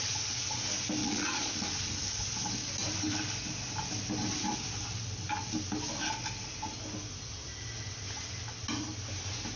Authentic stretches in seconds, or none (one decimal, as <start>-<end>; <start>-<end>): 0.0-1.0; 1.6-9.6